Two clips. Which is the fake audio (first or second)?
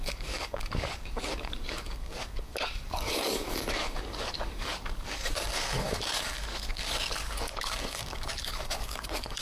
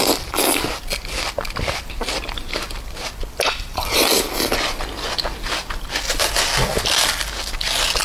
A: first